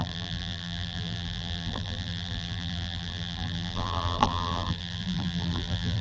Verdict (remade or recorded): remade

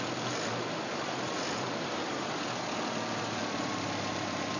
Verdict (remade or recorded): remade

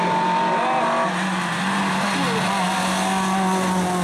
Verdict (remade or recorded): recorded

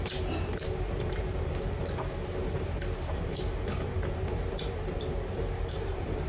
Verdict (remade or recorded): remade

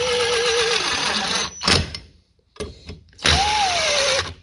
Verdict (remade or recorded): remade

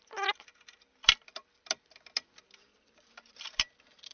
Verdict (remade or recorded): remade